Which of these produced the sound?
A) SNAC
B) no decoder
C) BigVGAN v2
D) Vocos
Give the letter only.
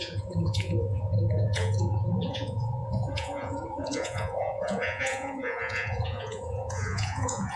D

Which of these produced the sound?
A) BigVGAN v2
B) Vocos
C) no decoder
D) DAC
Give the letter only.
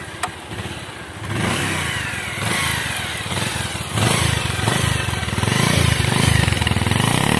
C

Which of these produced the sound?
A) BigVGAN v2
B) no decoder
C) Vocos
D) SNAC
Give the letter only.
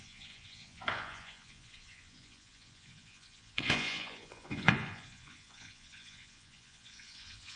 C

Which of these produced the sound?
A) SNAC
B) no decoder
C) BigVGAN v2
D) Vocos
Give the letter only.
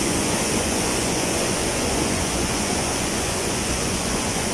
D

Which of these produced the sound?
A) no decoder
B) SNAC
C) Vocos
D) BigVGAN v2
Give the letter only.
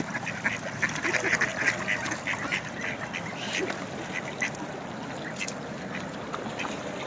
A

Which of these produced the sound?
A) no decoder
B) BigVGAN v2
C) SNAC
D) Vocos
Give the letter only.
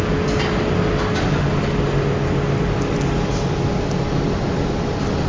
A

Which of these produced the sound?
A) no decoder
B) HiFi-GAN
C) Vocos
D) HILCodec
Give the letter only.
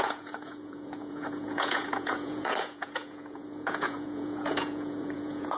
C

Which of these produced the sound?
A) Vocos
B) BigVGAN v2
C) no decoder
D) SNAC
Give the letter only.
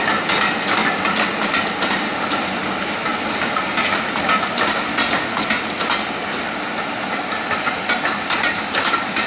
C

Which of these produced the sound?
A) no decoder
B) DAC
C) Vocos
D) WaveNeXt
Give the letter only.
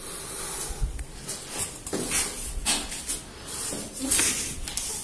A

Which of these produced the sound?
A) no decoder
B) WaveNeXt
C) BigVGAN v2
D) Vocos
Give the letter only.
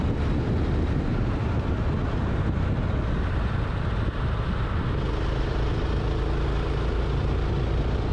A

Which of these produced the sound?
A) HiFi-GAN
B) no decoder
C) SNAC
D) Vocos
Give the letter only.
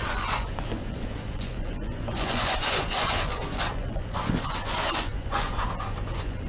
D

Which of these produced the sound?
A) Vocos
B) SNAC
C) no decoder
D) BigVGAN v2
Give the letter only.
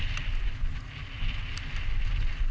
C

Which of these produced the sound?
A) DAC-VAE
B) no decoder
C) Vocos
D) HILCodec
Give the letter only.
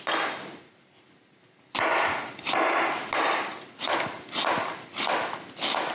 B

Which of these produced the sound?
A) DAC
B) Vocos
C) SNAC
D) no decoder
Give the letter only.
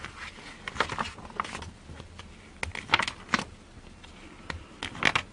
D